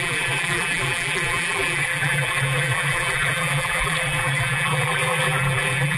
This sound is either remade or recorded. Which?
remade